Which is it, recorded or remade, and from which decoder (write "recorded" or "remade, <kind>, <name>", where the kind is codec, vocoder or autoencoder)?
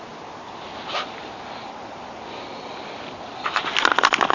recorded